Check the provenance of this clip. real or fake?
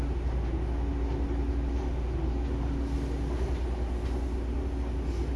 real